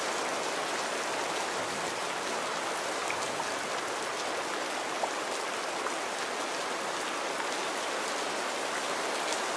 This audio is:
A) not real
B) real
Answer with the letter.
B